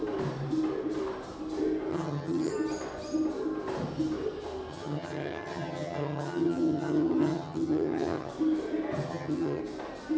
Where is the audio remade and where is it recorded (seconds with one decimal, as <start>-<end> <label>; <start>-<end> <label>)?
0.0-1.9 recorded; 1.9-2.5 remade; 2.5-4.7 recorded; 4.7-8.3 remade; 8.3-9.1 recorded; 9.1-9.6 remade; 9.6-10.2 recorded